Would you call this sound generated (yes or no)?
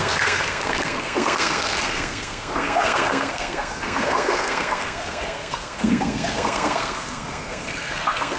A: yes